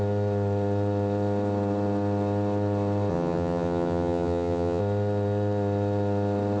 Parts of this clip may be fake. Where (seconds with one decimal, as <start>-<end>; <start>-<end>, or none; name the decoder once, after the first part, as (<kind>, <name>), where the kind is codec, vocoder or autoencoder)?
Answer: 3.1-4.8 (vocoder, HiFi-GAN)